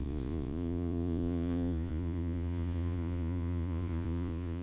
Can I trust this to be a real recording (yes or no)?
no